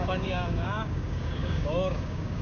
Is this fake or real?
fake